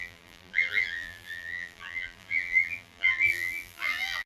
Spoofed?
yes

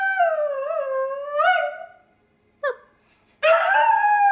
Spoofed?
no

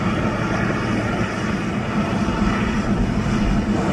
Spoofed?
no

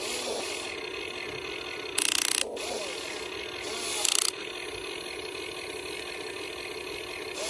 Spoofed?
no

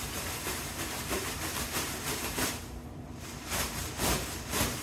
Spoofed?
yes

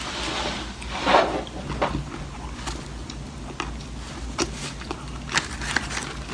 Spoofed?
no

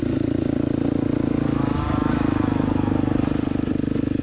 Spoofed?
no